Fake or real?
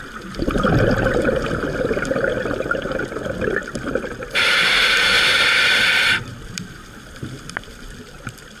real